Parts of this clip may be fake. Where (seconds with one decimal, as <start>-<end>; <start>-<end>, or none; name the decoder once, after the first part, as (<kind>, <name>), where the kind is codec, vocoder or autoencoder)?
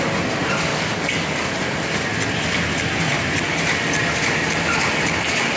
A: 0.7-1.6 (codec, DAC)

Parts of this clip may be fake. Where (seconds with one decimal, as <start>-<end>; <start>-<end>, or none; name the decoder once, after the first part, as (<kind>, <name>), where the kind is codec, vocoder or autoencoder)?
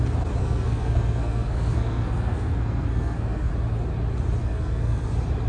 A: 0.4-3.5 (codec, SNAC); 4.4-5.1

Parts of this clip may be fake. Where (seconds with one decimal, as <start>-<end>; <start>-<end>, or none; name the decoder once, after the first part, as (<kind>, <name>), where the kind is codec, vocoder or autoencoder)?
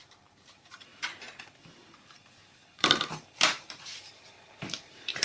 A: 0.0-5.2 (vocoder, BigVGAN v2)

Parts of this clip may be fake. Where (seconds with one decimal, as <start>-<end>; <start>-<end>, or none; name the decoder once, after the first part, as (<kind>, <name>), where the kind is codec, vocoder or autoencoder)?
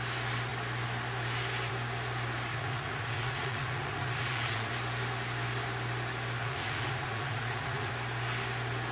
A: 2.5-4.7 (vocoder, Vocos); 6.4-7.9